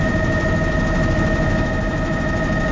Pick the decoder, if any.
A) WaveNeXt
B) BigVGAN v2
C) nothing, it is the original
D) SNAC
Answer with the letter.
B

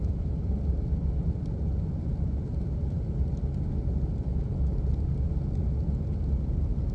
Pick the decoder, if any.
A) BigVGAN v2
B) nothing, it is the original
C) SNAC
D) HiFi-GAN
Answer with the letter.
B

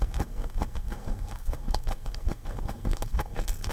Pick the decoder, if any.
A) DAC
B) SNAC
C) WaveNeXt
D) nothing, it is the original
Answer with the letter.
B